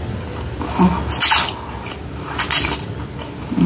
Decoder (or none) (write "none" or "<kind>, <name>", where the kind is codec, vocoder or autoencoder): none